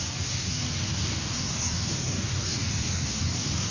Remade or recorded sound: remade